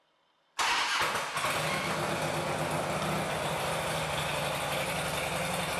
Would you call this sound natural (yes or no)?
yes